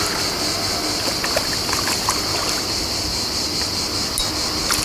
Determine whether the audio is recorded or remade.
recorded